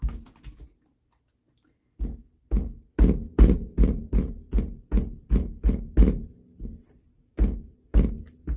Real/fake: real